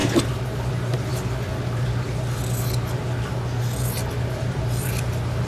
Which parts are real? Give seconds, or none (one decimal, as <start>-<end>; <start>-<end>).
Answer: 0.0-5.5